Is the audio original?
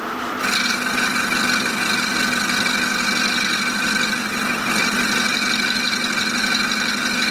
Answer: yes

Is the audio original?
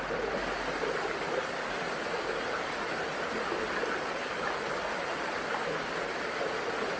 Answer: yes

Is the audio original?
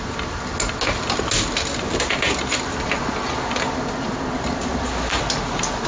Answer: yes